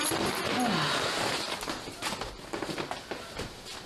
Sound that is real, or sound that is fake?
real